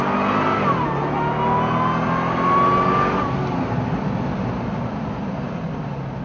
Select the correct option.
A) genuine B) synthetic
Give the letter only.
A